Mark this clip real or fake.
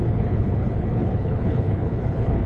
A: fake